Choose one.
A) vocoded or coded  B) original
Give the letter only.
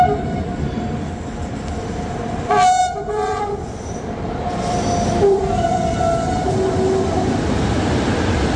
A